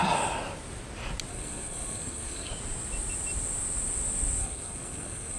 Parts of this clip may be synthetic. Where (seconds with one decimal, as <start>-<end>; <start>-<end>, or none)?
1.3-2.5; 4.4-5.4